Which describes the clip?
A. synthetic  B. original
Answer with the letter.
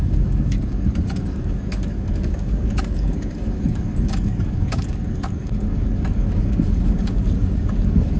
A